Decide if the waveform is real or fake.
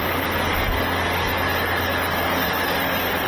real